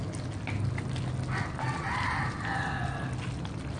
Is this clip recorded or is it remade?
recorded